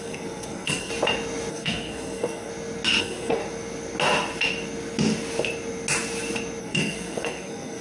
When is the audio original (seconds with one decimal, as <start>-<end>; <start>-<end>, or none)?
0.9-1.5; 2.5-3.0; 3.4-6.6